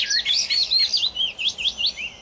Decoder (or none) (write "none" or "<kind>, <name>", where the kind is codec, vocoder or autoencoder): none